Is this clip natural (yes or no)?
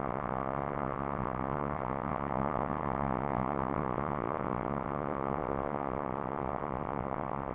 no